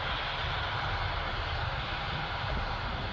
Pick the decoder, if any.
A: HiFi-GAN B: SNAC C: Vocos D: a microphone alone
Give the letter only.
D